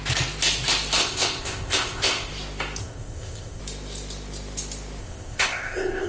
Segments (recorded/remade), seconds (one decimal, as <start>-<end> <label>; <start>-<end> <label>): 0.0-1.0 recorded; 1.0-2.3 remade; 2.3-2.8 recorded; 2.8-3.6 remade; 3.6-5.0 recorded; 5.0-6.1 remade

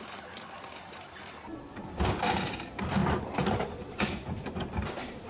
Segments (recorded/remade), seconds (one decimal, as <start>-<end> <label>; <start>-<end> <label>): 0.0-5.3 recorded

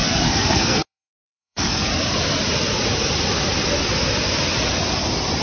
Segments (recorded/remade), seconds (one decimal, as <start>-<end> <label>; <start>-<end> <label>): 0.0-1.9 remade; 1.9-5.4 recorded

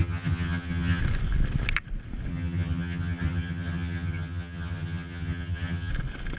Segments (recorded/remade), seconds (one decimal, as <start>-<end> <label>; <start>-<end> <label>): 0.0-1.0 remade; 1.0-2.3 recorded; 2.3-5.9 remade; 5.9-6.4 recorded

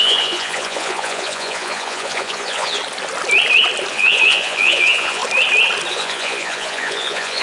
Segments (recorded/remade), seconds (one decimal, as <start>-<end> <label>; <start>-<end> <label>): 0.0-2.8 remade; 2.8-3.9 recorded; 3.9-5.2 remade; 5.2-5.9 recorded; 5.9-7.4 remade

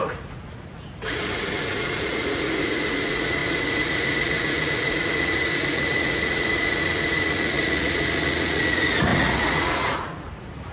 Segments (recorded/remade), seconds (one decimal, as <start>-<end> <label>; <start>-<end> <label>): 0.0-10.7 remade

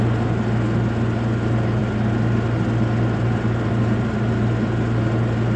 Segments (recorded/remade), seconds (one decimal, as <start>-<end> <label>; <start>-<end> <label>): 0.0-5.6 recorded